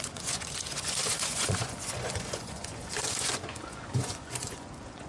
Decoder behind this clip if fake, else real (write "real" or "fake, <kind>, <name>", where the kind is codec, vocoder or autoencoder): fake, vocoder, Vocos